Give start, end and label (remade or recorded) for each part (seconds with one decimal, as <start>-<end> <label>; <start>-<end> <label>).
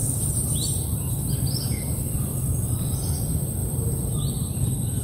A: 0.0-1.1 remade; 1.1-2.3 recorded; 2.3-3.2 remade; 3.2-3.6 recorded; 3.6-4.2 remade; 4.2-5.0 recorded